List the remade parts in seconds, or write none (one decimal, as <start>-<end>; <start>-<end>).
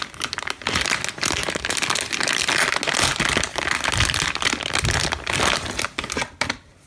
none